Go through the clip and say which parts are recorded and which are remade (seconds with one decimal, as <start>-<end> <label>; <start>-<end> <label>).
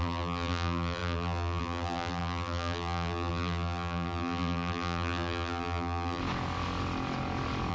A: 0.0-6.2 remade; 6.2-7.7 recorded